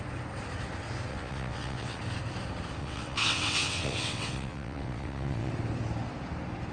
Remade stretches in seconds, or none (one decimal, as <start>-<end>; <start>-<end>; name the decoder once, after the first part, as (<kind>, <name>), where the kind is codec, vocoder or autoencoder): 1.1-2.0 (vocoder, WaveNeXt); 2.8-5.5

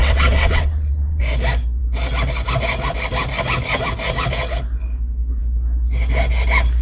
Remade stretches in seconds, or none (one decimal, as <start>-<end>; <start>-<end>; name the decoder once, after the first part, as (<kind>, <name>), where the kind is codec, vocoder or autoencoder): 0.0-1.2 (vocoder, WaveNeXt)